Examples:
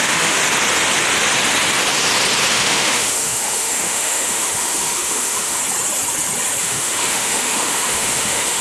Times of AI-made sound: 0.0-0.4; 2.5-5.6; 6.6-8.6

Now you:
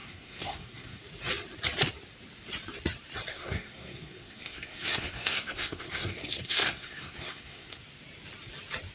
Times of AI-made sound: 0.0-1.0; 3.3-7.8